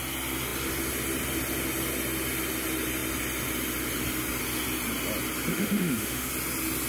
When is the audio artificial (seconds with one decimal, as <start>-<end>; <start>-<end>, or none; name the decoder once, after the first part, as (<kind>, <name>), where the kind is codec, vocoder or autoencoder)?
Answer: 5.5-6.3 (autoencoder, DAC-VAE)